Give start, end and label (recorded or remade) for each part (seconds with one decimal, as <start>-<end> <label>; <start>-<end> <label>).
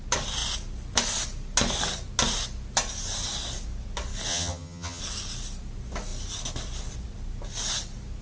0.0-4.3 recorded; 4.3-5.0 remade; 5.0-8.2 recorded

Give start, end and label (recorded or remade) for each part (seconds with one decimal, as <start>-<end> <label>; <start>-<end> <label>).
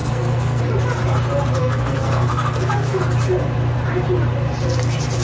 0.0-0.6 remade; 0.6-1.6 recorded; 1.6-3.0 remade; 3.0-5.2 recorded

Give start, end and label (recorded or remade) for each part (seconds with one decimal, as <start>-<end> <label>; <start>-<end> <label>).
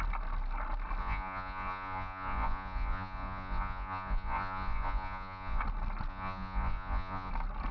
0.0-1.0 recorded; 1.0-5.6 remade; 5.6-6.1 recorded; 6.1-7.3 remade; 7.3-7.7 recorded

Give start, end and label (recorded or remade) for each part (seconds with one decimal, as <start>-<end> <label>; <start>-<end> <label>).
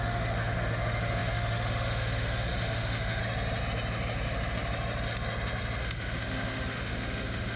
0.0-3.2 remade; 3.2-5.8 recorded; 5.8-7.6 remade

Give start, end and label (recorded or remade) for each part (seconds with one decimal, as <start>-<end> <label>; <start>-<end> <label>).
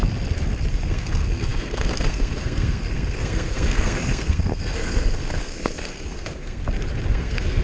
0.0-0.7 recorded; 0.7-6.6 remade; 6.6-7.1 recorded; 7.1-7.6 remade